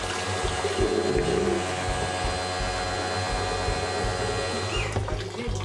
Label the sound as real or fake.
real